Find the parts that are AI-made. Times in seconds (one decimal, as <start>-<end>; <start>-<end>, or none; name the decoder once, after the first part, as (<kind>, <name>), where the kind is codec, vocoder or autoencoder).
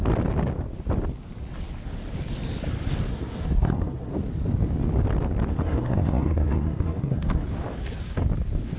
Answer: 3.1-4.1 (codec, SNAC); 5.5-7.4